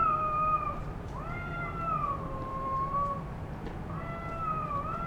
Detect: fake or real fake